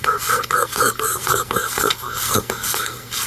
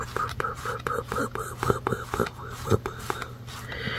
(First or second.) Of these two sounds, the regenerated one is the first